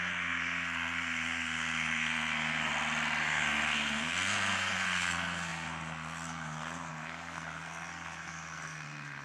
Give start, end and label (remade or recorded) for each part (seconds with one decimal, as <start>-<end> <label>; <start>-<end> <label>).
0.0-2.7 remade; 2.7-3.2 recorded; 3.2-9.2 remade